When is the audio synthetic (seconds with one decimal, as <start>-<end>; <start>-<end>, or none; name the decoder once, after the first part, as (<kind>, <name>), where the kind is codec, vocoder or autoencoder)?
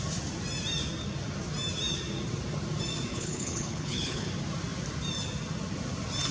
3.1-4.3 (codec, HILCodec)